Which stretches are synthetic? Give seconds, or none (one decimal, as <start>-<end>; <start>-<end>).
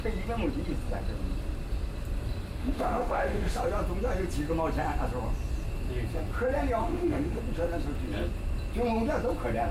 2.6-3.6; 6.8-7.4